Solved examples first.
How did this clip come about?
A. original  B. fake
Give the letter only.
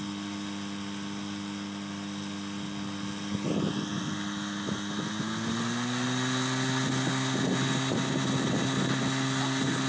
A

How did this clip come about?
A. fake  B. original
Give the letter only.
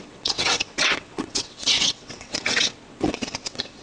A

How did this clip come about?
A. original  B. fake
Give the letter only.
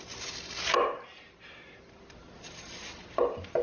A